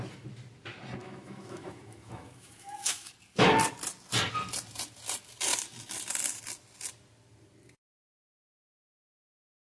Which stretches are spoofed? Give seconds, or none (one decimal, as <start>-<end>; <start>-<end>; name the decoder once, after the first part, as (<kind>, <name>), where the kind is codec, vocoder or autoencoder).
1.0-3.1 (autoencoder, DAC-VAE)